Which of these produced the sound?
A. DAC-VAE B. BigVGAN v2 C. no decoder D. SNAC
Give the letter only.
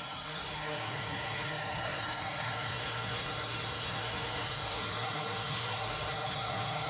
D